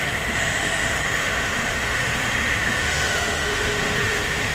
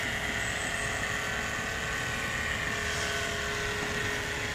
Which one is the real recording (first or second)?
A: second